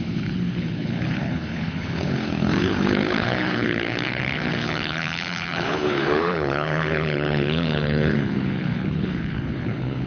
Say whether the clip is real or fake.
fake